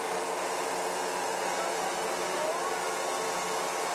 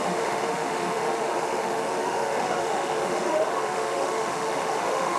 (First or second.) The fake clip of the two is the second